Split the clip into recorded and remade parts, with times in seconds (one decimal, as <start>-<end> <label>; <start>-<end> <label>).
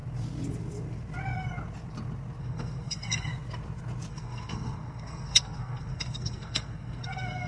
0.0-2.4 recorded; 2.4-3.3 remade; 3.3-4.1 recorded; 4.1-7.5 remade